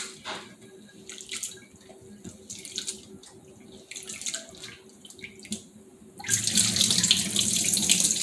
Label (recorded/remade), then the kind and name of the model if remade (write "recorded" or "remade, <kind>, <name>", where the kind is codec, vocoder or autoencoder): recorded